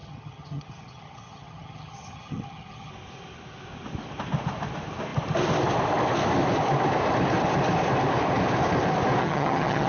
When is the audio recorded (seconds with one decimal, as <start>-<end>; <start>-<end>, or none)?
2.9-9.2